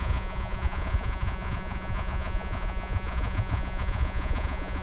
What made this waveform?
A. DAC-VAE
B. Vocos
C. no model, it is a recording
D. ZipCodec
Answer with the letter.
B